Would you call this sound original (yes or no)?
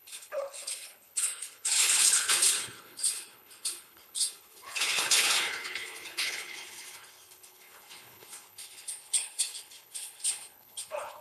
no